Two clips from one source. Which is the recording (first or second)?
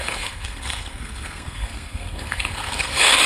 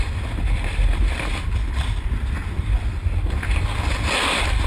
second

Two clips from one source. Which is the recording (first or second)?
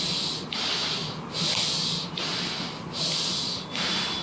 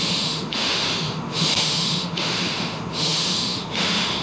first